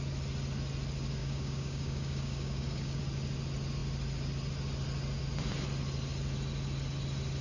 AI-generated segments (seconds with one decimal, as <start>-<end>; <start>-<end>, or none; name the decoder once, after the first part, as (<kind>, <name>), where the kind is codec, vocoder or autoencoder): 1.2-3.0 (codec, DAC)